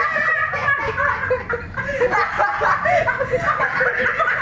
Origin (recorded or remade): recorded